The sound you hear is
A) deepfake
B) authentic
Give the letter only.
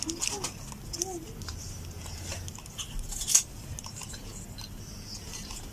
B